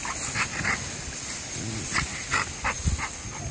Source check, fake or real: real